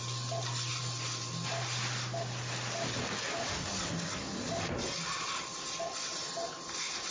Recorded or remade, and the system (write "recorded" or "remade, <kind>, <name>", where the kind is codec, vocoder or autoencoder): recorded